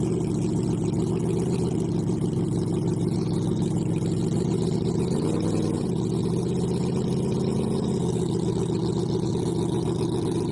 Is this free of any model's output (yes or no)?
yes